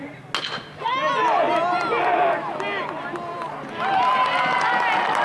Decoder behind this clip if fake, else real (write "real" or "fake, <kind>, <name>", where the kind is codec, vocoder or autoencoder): real